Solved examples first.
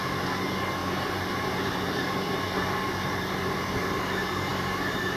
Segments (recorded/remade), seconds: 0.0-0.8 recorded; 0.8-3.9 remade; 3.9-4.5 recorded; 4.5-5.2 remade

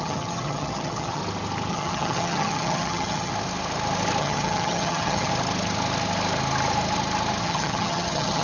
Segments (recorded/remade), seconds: 0.0-1.2 remade; 1.2-1.7 recorded; 1.7-3.3 remade; 3.3-4.2 recorded; 4.2-5.3 remade; 5.3-7.4 recorded; 7.4-8.4 remade

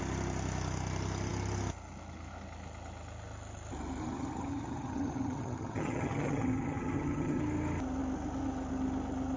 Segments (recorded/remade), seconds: 0.0-4.0 recorded; 4.0-7.4 remade; 7.4-9.4 recorded